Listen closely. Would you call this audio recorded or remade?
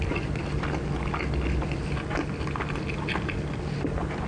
recorded